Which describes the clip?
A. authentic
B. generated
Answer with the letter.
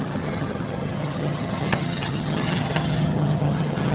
B